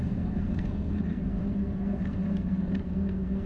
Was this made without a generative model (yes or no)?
no